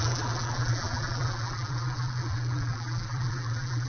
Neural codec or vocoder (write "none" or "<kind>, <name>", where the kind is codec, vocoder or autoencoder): vocoder, BigVGAN v2